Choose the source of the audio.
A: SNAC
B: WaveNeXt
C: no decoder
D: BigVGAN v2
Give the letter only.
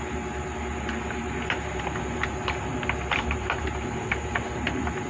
C